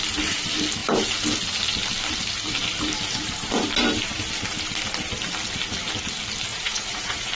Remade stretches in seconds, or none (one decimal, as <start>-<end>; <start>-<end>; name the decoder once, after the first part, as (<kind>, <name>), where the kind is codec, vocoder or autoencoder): 6.5-7.3 (vocoder, Vocos)